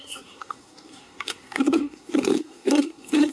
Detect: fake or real fake